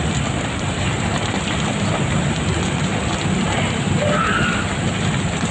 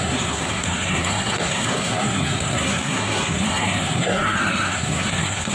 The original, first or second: first